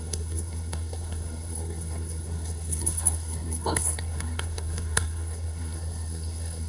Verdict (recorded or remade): remade